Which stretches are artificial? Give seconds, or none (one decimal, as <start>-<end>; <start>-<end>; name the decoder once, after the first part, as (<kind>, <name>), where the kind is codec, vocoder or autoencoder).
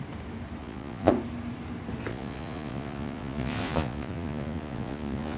0.6-1.1 (vocoder, Vocos); 2.1-5.4